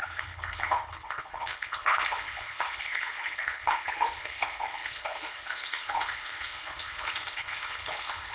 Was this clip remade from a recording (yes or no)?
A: yes